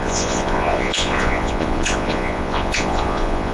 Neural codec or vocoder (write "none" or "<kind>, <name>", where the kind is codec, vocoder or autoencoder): vocoder, Vocos